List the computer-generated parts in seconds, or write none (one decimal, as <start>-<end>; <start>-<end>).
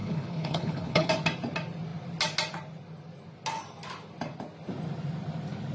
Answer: 0.0-1.1